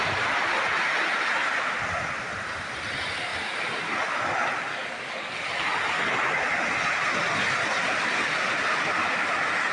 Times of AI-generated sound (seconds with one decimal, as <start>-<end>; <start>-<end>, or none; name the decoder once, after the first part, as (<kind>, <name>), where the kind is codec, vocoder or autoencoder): 4.7-5.3 (codec, DAC)